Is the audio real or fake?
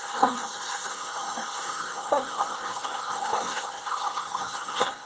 fake